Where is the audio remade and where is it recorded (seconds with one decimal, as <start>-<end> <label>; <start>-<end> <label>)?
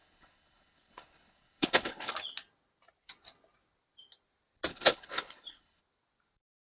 0.0-2.1 remade; 2.1-4.7 recorded; 4.7-5.8 remade; 5.8-6.7 recorded